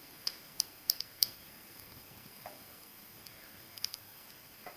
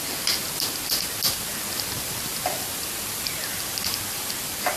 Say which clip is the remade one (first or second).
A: first